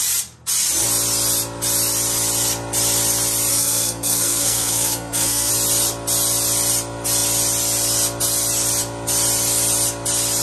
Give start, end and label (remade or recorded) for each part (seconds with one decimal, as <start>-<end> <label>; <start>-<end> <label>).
0.0-3.5 recorded; 3.5-5.5 remade; 5.5-10.4 recorded